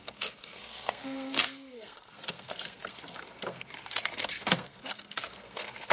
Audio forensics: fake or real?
fake